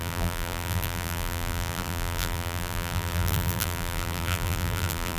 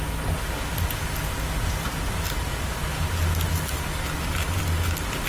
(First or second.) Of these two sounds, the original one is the second